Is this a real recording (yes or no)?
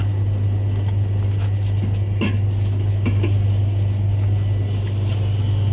yes